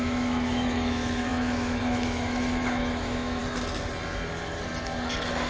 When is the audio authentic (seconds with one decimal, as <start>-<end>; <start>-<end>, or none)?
3.4-5.5